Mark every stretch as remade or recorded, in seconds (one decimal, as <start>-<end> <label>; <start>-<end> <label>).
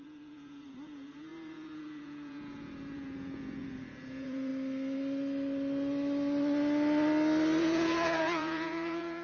0.0-4.5 remade; 4.5-7.6 recorded; 7.6-9.2 remade